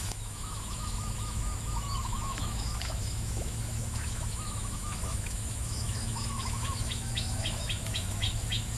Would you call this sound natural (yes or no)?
no